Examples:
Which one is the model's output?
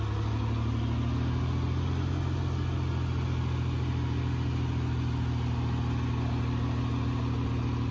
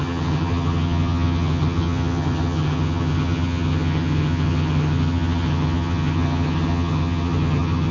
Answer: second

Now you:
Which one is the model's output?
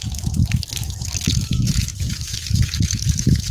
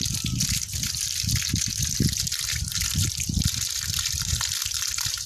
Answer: first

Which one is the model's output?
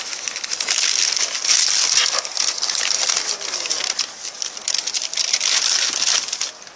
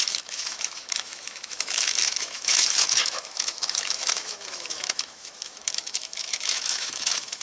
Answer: second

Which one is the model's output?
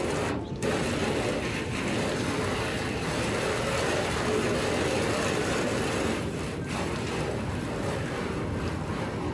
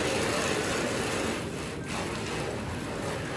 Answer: first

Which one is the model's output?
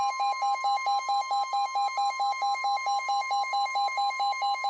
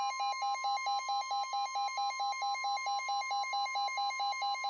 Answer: first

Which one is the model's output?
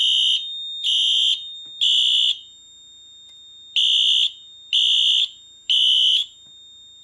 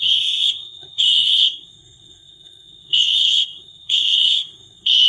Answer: second